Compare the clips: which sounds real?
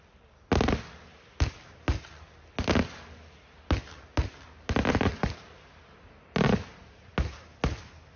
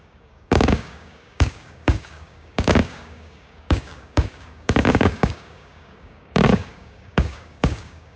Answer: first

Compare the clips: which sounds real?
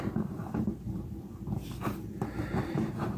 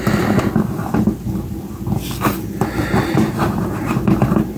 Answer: second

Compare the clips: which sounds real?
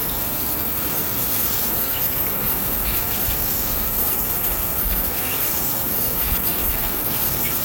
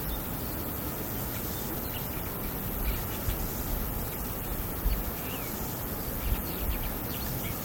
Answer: second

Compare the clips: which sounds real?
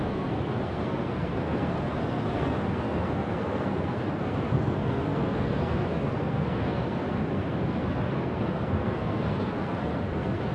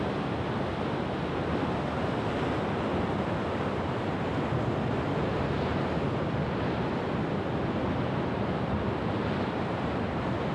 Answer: second